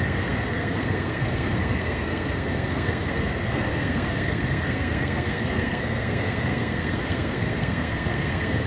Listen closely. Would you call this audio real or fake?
fake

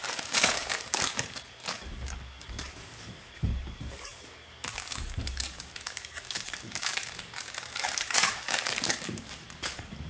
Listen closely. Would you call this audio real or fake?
fake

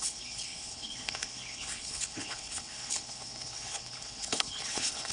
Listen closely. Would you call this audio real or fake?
fake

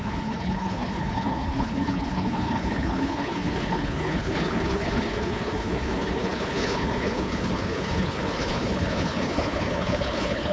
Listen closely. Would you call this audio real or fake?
fake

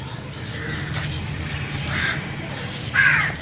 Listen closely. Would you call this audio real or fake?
fake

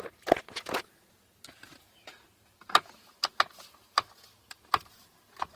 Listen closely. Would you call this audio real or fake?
real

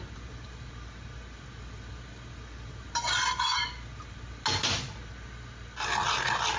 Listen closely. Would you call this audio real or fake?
real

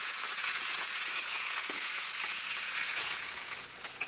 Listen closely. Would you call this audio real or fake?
fake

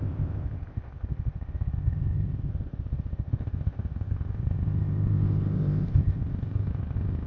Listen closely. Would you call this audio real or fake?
fake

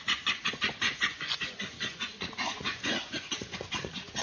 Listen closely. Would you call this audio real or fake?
fake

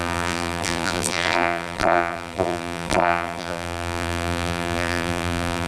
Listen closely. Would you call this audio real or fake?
fake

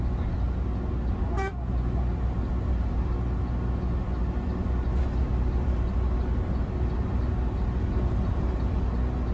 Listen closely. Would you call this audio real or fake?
real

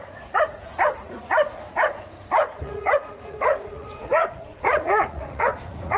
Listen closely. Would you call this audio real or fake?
fake